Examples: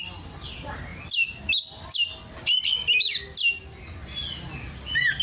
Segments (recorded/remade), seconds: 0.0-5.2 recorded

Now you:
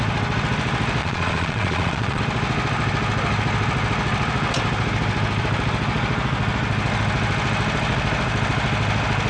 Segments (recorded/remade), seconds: 0.0-1.0 recorded; 1.0-2.2 remade; 2.2-9.3 recorded

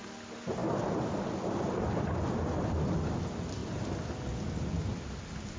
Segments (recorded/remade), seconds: 0.0-5.6 recorded

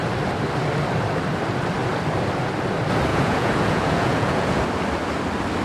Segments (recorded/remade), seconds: 0.0-3.1 recorded; 3.1-4.6 remade; 4.6-5.6 recorded

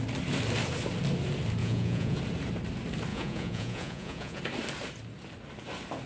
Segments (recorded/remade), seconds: 0.0-1.6 recorded; 1.6-2.2 remade; 2.2-3.1 recorded; 3.1-4.4 remade; 4.4-6.1 recorded

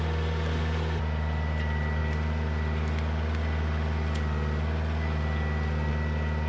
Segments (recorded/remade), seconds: 0.0-6.5 recorded